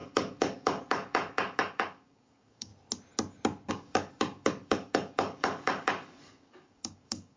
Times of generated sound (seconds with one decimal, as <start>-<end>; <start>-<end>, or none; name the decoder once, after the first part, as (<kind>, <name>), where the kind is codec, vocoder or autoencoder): 0.0-2.7 (codec, DAC); 3.7-7.4